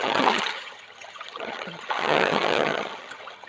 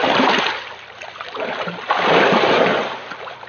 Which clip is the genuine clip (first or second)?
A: second